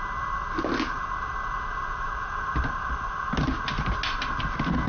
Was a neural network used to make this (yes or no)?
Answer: no